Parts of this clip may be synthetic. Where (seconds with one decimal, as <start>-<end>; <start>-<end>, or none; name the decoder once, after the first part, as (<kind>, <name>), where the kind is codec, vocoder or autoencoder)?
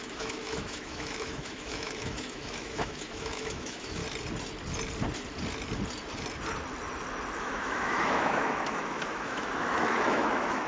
0.0-4.0 (autoencoder, DAC-VAE); 7.4-10.7